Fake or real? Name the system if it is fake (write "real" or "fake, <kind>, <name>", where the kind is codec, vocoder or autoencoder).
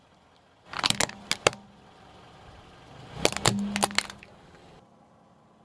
real